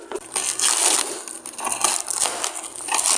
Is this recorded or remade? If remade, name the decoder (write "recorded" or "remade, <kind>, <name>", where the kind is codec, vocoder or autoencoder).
recorded